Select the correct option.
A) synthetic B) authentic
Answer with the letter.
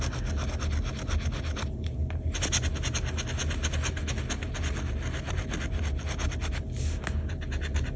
B